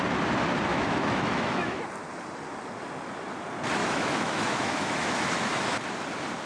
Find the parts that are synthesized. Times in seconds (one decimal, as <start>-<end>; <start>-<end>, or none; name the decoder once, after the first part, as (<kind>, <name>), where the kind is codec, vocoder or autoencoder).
0.7-1.8 (autoencoder, DAC-VAE); 3.8-5.5